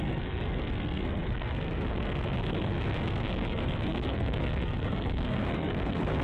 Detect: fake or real fake